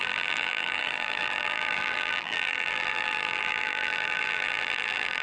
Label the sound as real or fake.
fake